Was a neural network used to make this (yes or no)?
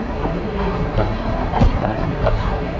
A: yes